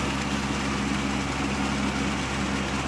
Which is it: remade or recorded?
recorded